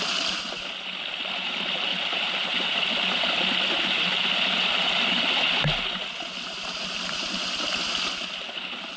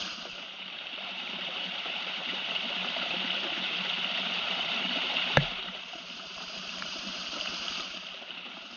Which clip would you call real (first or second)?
first